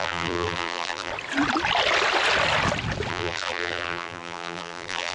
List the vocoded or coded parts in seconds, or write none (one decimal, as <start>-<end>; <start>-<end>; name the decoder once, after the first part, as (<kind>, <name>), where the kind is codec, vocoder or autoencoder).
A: 0.0-1.1 (vocoder, BigVGAN v2); 3.1-5.1